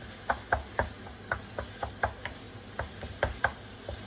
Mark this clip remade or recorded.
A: recorded